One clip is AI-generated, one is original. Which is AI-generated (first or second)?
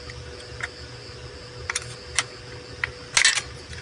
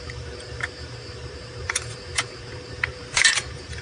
second